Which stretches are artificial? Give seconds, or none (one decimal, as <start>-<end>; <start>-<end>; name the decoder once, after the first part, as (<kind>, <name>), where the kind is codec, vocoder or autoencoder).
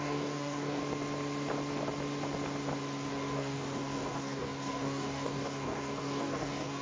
0.0-0.8 (codec, DAC); 3.1-6.8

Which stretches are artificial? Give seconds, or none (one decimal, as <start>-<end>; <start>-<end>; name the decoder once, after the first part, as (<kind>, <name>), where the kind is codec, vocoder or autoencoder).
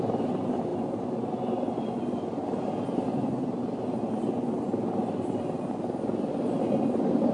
none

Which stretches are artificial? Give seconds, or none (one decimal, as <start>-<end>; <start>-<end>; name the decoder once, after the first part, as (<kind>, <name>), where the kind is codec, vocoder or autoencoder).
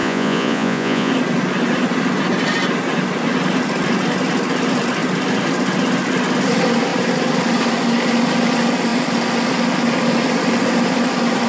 0.0-1.1 (vocoder, Vocos)